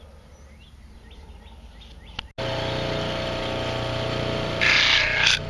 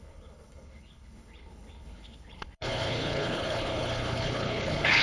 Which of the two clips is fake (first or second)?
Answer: second